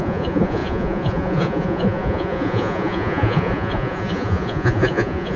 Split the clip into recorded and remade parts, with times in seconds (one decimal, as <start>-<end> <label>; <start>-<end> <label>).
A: 0.0-5.4 remade